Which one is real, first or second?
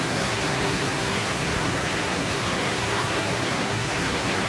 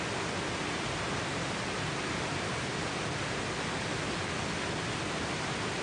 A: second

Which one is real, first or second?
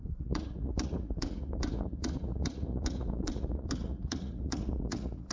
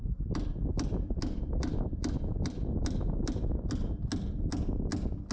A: second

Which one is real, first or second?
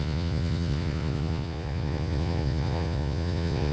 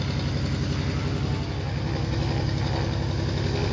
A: second